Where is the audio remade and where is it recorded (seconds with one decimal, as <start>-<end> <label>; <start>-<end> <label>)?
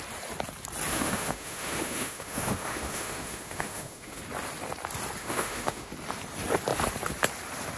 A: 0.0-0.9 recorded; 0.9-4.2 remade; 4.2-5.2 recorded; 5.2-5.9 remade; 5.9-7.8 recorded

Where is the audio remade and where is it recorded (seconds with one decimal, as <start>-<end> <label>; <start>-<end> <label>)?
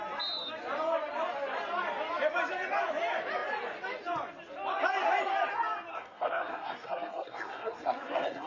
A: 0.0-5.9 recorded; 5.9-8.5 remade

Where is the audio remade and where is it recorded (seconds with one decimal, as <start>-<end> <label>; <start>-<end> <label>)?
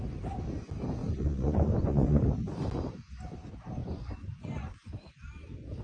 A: 0.0-1.0 recorded; 1.0-2.2 remade; 2.2-3.8 recorded; 3.8-5.1 remade; 5.1-5.8 recorded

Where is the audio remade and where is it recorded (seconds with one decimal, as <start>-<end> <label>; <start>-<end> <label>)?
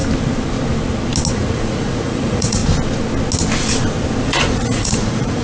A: 0.0-1.3 recorded; 1.3-2.6 remade; 2.6-4.2 recorded; 4.2-5.4 remade